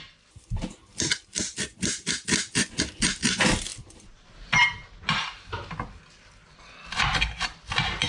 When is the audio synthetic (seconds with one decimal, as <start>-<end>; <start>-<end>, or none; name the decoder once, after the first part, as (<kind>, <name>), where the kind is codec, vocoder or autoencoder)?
none